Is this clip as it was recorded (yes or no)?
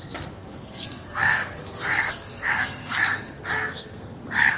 no